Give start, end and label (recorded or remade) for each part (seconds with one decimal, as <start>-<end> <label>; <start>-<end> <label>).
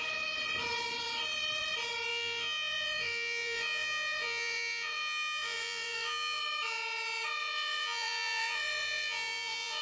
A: 0.0-2.1 recorded; 2.1-6.4 remade; 6.4-7.4 recorded; 7.4-9.8 remade